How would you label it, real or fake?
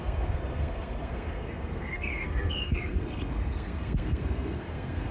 fake